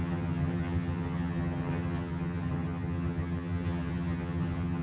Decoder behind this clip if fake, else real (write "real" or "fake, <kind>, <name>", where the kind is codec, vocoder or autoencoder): fake, vocoder, HiFi-GAN